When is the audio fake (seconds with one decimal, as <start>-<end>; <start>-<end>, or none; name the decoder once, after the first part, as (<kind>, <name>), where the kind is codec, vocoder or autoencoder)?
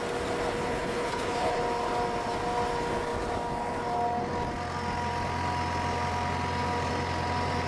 0.5-1.6 (codec, HILCodec)